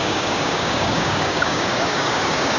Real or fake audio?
fake